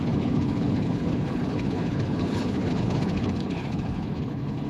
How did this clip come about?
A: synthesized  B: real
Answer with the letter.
A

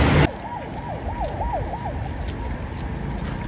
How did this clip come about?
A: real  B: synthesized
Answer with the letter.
A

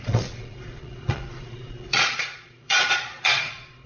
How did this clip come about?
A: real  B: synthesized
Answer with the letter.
B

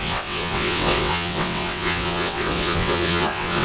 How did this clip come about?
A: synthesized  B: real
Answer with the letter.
A